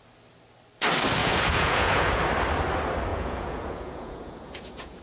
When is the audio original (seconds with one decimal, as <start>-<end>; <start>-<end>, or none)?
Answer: 0.0-1.2; 2.2-3.1